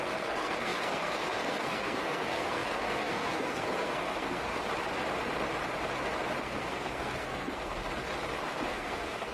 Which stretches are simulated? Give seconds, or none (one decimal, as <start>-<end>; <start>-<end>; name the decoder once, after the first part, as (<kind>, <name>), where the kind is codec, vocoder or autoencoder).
0.0-4.5 (codec, SNAC); 6.4-7.8; 8.5-9.3